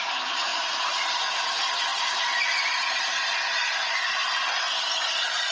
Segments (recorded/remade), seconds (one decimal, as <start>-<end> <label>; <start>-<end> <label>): 0.0-5.5 recorded